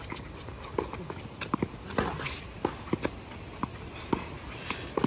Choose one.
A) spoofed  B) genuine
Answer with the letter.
B